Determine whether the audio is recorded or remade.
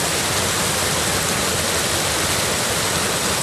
recorded